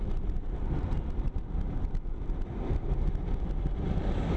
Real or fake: real